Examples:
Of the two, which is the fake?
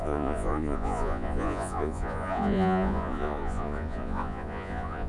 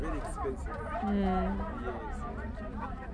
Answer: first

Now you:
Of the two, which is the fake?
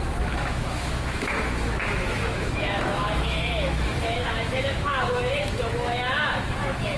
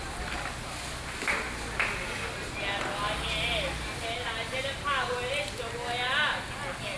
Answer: first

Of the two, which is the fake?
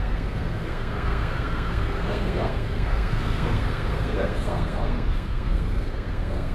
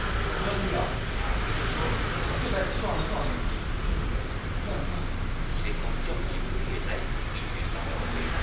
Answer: first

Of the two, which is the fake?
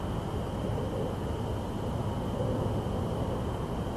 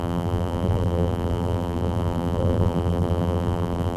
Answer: second